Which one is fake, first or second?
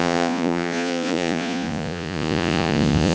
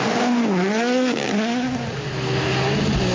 first